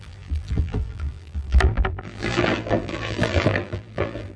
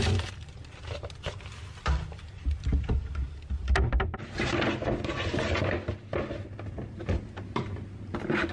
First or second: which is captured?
second